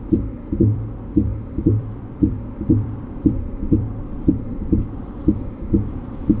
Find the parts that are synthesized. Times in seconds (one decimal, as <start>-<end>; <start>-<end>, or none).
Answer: 0.0-6.4